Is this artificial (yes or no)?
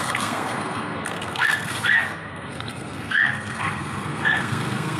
yes